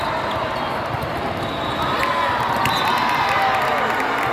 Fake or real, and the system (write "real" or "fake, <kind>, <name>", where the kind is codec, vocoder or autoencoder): real